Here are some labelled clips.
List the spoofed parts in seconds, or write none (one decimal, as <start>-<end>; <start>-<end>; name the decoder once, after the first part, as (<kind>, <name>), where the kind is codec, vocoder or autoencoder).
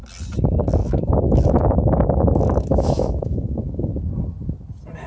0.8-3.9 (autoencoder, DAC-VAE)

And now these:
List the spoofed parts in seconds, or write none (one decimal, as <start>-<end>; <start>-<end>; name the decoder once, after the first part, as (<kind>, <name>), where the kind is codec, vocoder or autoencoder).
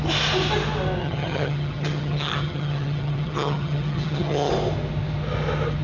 1.0-4.5 (vocoder, HiFi-GAN)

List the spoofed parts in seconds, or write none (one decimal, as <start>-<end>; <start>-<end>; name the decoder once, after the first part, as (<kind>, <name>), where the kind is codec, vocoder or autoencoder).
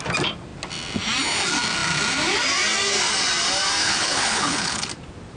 3.8-4.9 (codec, HILCodec)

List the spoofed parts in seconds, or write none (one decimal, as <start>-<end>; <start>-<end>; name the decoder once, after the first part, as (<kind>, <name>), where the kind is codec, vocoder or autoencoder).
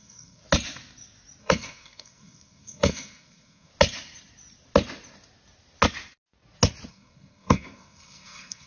0.0-0.4 (codec, SNAC); 1.4-3.7; 6.9-8.7